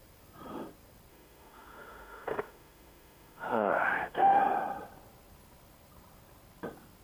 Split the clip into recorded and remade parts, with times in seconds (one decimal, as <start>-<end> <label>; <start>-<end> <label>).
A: 0.0-1.1 recorded; 1.1-4.4 remade; 4.4-7.0 recorded